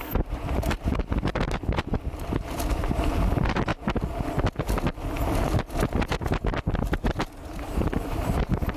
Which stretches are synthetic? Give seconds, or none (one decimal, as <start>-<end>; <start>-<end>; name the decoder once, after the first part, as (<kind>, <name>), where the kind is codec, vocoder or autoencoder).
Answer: 0.0-1.3 (vocoder, BigVGAN v2); 3.2-3.7; 7.6-8.8